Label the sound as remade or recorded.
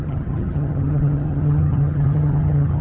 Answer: remade